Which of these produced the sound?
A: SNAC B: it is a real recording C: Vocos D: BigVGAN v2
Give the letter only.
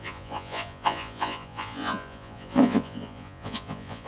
C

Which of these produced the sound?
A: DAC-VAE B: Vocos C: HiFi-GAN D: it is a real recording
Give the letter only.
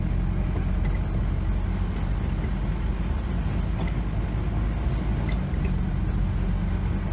D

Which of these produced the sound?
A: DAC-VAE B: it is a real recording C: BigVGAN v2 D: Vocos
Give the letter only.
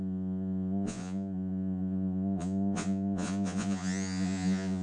D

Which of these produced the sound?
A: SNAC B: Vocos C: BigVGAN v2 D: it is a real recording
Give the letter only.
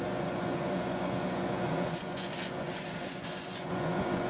B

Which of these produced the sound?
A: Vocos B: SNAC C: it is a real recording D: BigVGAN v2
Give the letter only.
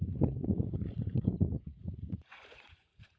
A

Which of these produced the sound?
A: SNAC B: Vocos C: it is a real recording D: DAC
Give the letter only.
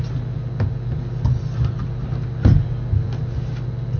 C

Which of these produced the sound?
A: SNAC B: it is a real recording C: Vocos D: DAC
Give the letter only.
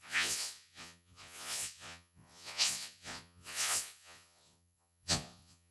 C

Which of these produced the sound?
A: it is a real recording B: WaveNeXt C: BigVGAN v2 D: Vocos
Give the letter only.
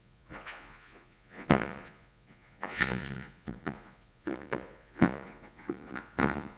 D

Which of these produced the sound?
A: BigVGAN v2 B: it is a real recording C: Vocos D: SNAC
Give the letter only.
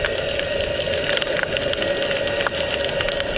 B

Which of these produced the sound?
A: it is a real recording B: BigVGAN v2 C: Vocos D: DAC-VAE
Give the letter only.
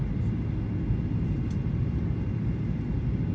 A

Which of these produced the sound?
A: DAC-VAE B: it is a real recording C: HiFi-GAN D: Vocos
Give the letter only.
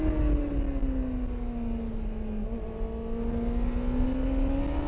B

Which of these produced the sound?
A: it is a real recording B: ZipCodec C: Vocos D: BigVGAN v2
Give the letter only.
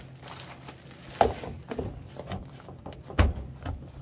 A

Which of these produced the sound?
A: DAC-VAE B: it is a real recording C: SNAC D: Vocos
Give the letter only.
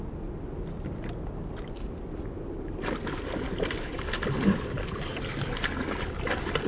B